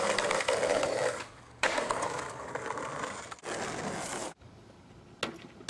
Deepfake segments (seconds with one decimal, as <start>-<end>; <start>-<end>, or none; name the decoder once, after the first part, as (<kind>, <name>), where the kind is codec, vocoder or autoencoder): 0.7-2.5 (codec, DAC); 4.2-4.9